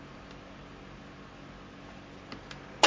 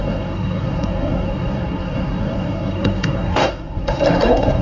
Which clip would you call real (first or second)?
first